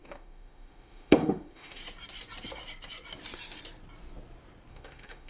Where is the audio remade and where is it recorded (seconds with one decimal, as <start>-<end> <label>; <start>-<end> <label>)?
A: 0.0-1.8 remade; 1.8-4.7 recorded; 4.7-5.3 remade